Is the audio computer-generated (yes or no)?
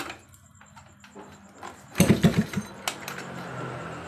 no